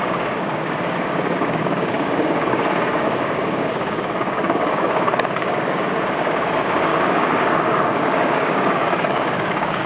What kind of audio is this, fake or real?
fake